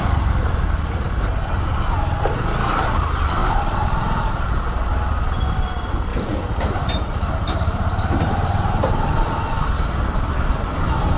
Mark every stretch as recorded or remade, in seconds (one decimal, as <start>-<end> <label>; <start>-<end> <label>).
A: 0.0-3.4 recorded; 3.4-4.5 remade; 4.5-6.1 recorded; 6.1-10.3 remade; 10.3-11.2 recorded